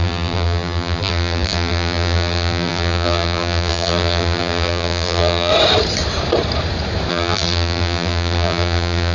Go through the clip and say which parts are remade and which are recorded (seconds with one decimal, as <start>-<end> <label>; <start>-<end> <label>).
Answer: 0.0-5.5 remade; 5.5-7.1 recorded; 7.1-9.1 remade